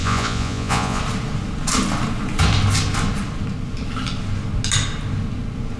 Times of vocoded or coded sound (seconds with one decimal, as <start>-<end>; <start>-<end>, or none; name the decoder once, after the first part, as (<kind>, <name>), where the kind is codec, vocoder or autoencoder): 0.0-1.0 (vocoder, Vocos)